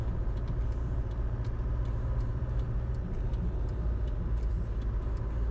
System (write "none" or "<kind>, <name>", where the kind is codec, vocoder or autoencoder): none